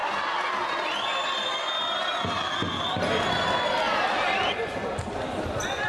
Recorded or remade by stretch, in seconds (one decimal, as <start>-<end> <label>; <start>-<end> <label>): 0.0-5.9 recorded